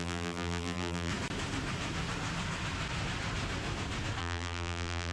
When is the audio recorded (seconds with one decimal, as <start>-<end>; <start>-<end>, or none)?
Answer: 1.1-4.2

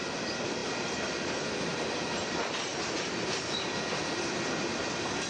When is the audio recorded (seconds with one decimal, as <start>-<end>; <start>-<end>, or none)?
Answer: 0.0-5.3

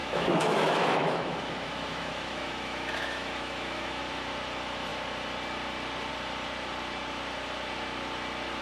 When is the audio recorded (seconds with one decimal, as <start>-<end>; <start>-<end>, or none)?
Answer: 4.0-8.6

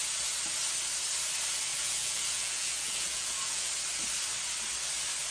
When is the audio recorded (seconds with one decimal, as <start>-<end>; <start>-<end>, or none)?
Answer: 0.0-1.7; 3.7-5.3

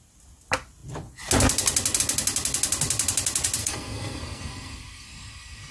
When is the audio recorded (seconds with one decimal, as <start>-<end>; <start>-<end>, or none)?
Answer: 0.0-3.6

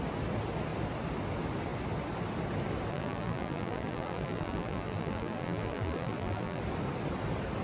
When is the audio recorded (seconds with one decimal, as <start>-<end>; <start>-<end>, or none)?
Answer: 0.0-2.9; 6.6-7.6

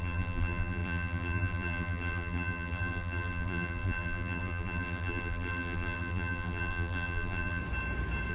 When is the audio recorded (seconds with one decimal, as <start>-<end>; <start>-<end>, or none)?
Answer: 7.6-8.3

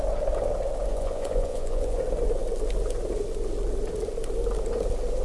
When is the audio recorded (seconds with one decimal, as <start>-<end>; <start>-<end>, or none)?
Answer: 0.0-0.9; 2.0-5.2